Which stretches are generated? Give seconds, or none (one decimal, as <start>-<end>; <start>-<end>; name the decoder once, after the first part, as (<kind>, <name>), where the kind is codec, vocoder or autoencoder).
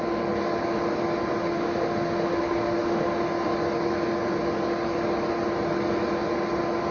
1.4-3.2 (autoencoder, DAC-VAE)